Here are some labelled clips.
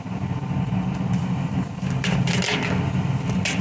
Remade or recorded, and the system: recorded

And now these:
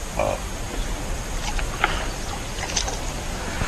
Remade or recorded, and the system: recorded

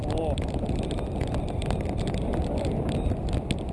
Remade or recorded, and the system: recorded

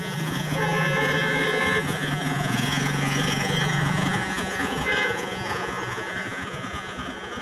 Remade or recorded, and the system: remade, vocoder, Vocos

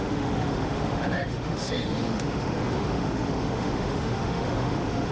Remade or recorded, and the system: remade, autoencoder, DAC-VAE